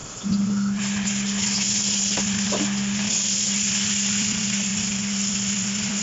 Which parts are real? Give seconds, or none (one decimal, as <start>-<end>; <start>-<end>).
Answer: 0.0-3.1